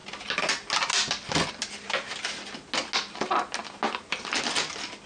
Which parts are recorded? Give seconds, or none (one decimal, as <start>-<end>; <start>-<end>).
0.0-5.1

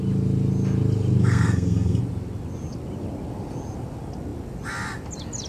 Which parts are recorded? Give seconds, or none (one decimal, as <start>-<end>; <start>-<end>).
0.0-1.2; 2.0-5.5

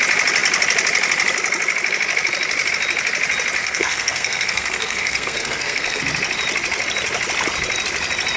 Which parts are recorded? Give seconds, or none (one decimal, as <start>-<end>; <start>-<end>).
0.0-3.6; 6.0-8.4

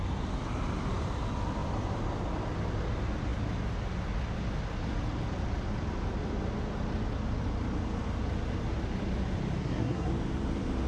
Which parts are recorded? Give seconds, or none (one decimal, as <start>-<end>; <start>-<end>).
0.0-9.6; 10.1-10.9

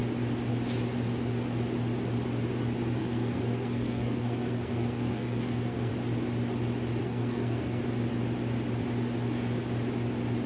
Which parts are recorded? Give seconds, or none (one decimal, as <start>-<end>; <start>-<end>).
0.0-3.0; 5.9-7.0; 7.8-10.5

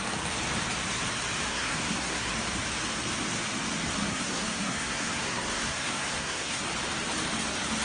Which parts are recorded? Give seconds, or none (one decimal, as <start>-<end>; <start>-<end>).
0.0-1.5; 2.3-4.0; 6.6-7.8

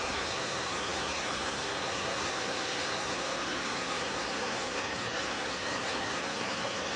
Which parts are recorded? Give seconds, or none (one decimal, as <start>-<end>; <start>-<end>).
none